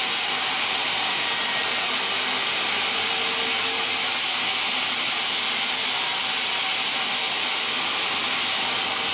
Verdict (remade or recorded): recorded